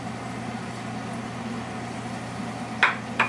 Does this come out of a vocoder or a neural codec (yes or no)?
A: no